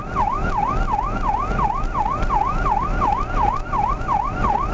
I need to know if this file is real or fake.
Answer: real